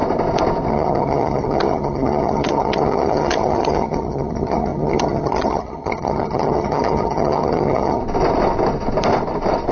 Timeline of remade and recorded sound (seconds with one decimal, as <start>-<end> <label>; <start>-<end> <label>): 0.0-0.7 recorded; 0.7-8.0 remade; 8.0-9.7 recorded